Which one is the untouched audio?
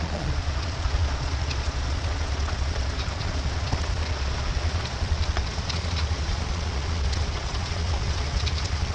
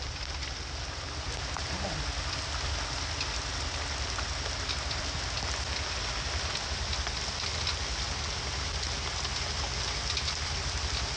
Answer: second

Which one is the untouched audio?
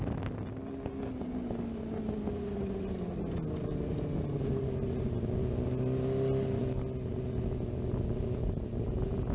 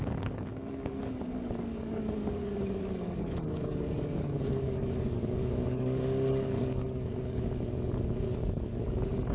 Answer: first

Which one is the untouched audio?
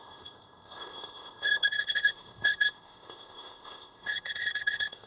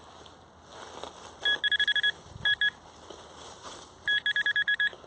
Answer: second